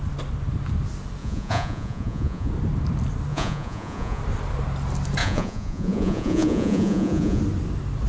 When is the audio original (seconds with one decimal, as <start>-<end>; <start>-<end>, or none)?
0.0-1.2; 2.5-3.3; 4.2-5.2; 7.4-8.1